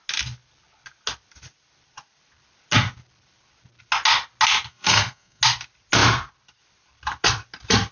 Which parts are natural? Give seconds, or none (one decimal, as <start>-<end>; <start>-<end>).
0.0-4.7; 5.4-7.9